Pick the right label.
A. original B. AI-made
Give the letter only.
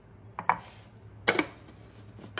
A